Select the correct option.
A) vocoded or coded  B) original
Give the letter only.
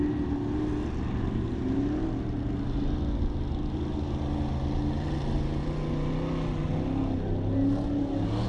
B